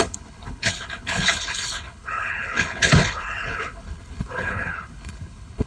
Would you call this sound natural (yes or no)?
no